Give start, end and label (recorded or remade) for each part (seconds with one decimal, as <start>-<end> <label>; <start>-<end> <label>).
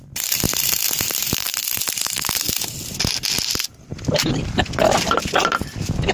0.0-1.5 remade; 1.5-5.2 recorded; 5.2-6.1 remade